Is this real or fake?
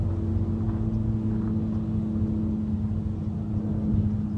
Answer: real